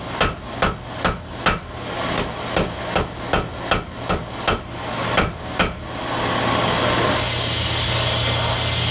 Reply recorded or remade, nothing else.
recorded